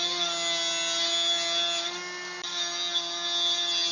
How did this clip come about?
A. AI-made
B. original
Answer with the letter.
B